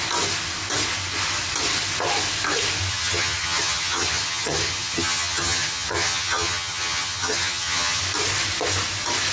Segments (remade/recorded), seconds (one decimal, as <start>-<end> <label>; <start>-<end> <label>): 0.0-2.9 recorded; 2.9-8.0 remade; 8.0-9.3 recorded